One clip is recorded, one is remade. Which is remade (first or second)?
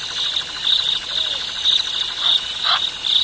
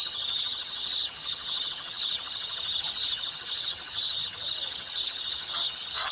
second